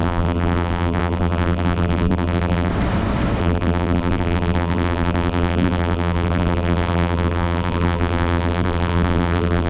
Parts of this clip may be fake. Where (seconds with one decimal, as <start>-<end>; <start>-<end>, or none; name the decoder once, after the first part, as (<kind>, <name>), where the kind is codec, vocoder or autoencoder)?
0.0-2.7 (vocoder, BigVGAN v2); 3.4-9.7